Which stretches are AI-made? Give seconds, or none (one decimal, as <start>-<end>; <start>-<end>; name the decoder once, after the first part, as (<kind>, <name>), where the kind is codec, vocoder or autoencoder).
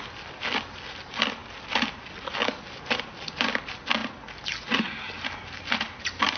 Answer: none